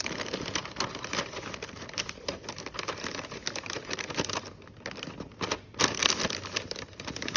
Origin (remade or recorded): recorded